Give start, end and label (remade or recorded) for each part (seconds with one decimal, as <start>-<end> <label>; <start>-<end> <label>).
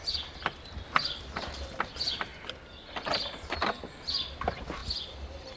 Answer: 0.0-4.8 remade; 4.8-5.6 recorded